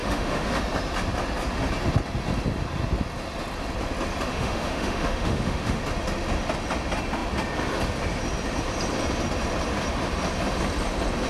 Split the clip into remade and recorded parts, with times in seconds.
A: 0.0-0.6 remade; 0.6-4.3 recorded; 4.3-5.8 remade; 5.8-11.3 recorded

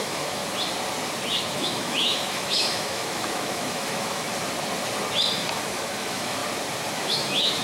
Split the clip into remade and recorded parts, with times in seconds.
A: 0.0-0.4 remade; 0.4-1.4 recorded; 1.4-4.3 remade; 4.3-5.6 recorded; 5.6-6.4 remade; 6.4-6.9 recorded; 6.9-7.6 remade

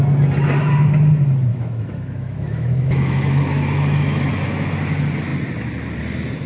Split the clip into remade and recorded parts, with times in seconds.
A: 0.0-1.5 recorded; 1.5-4.3 remade; 4.3-6.5 recorded

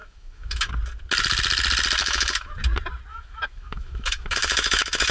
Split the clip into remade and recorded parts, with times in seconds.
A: 0.0-0.7 remade; 0.7-2.0 recorded; 2.0-2.5 remade; 2.5-3.1 recorded; 3.1-5.1 remade

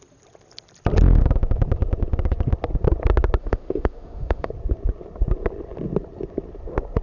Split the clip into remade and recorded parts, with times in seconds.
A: 0.0-3.4 recorded; 3.4-4.5 remade; 4.5-7.0 recorded

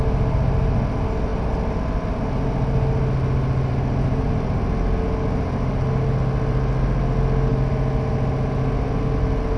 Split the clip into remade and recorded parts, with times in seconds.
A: 0.0-9.6 recorded

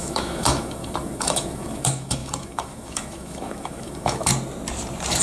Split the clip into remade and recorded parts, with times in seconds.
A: 0.0-4.3 remade; 4.3-5.2 recorded

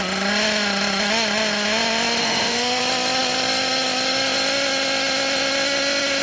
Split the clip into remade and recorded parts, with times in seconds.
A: 0.0-2.2 recorded; 2.2-2.8 remade; 2.8-6.2 recorded